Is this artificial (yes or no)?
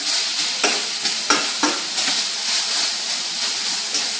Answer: no